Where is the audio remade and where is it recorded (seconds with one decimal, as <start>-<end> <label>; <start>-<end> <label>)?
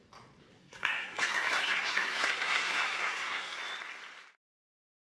0.0-0.6 recorded; 0.6-3.6 remade; 3.6-5.0 recorded